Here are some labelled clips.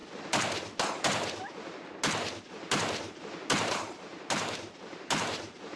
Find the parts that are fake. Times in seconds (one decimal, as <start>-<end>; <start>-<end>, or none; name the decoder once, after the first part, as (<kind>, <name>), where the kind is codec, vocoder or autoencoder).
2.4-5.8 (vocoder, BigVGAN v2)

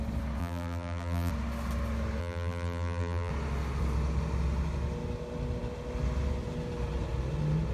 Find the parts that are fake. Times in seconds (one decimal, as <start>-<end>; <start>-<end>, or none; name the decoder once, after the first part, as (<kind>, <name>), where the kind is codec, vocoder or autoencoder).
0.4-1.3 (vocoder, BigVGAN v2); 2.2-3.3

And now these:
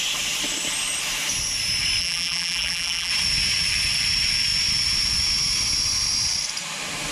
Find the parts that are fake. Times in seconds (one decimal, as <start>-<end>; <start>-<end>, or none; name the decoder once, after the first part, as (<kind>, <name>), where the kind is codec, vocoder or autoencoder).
2.0-3.1 (vocoder, BigVGAN v2)

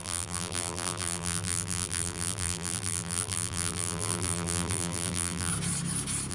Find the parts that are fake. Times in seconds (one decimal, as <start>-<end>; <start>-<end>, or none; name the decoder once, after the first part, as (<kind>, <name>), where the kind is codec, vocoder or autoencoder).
0.0-5.5 (vocoder, BigVGAN v2)

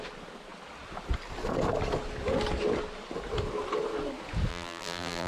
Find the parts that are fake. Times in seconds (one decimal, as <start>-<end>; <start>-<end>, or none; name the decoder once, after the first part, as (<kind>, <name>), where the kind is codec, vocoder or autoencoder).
4.5-5.3 (vocoder, BigVGAN v2)

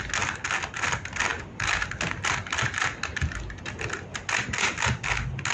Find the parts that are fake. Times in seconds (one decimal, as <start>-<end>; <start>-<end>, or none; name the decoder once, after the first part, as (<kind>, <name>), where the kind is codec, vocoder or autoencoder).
none